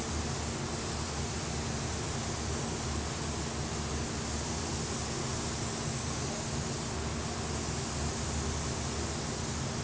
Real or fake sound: real